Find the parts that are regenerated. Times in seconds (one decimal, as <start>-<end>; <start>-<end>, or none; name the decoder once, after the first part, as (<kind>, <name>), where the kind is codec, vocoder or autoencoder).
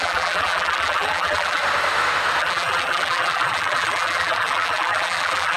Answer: 0.0-1.6 (vocoder, BigVGAN v2); 2.4-5.6